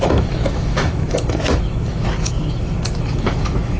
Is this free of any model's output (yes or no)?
no